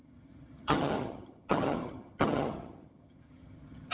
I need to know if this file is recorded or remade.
remade